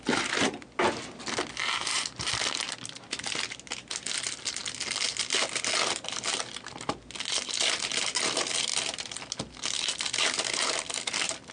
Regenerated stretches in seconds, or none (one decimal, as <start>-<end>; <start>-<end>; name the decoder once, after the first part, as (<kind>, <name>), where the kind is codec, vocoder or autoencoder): none